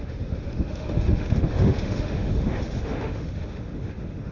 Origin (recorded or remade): remade